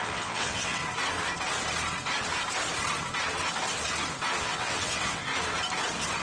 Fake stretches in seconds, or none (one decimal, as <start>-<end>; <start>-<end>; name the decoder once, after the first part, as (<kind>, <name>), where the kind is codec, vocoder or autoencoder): 0.0-0.8 (vocoder, WaveNeXt); 4.4-5.3